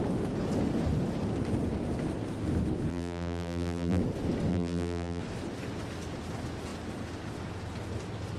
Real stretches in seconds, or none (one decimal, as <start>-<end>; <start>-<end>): 0.0-2.9; 4.0-4.5; 5.2-8.4